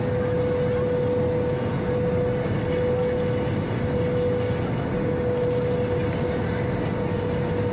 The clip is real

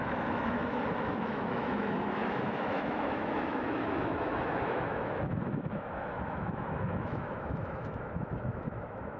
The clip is fake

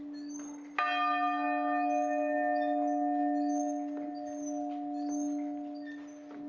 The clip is real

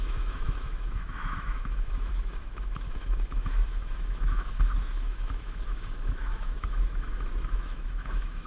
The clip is fake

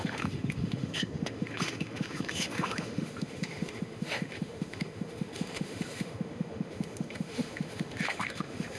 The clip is fake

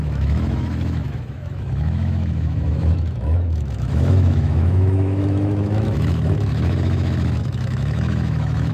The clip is fake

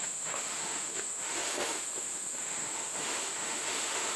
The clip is fake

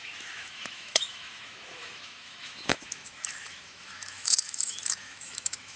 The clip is fake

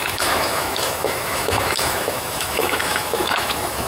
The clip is fake